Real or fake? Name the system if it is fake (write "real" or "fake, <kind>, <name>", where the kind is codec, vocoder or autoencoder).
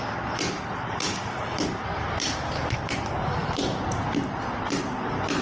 real